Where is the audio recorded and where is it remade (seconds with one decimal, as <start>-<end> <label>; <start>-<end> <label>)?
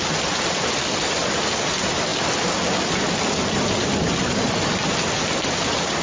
0.0-6.0 recorded